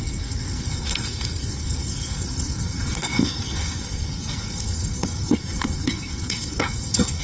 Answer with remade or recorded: remade